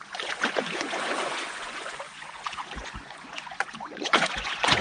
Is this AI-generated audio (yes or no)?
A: yes